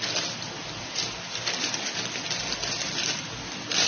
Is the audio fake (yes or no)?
no